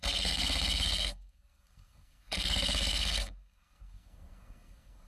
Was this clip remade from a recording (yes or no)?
yes